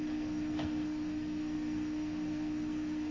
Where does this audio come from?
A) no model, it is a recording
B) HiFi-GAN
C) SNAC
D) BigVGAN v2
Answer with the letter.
C